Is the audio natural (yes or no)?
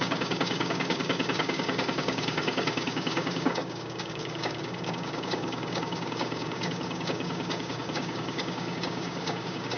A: no